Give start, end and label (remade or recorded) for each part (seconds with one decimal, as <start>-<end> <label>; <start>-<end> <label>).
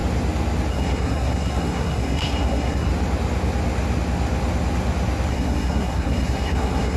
0.0-0.7 recorded; 0.7-2.9 remade; 2.9-5.3 recorded; 5.3-7.0 remade